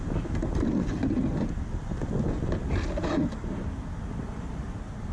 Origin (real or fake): real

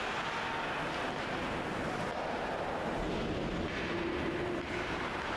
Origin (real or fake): real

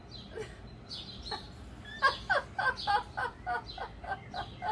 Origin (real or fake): real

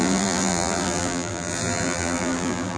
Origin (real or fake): fake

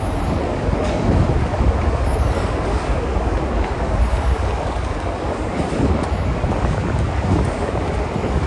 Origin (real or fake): fake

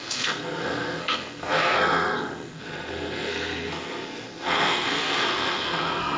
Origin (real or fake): fake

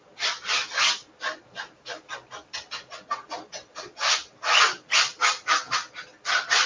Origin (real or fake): real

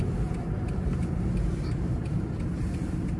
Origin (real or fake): real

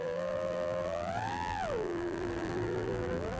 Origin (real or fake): fake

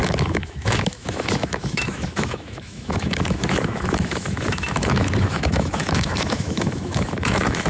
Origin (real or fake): fake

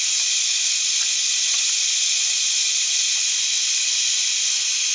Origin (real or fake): real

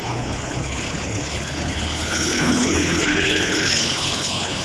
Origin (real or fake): fake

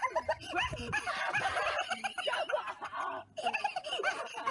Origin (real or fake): real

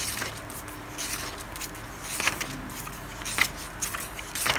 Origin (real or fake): real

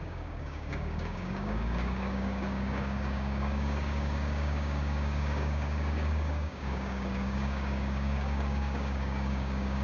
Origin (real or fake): fake